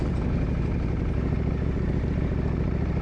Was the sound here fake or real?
real